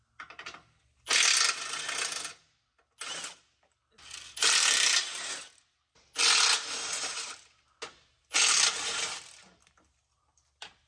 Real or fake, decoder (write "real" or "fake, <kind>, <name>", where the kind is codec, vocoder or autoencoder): real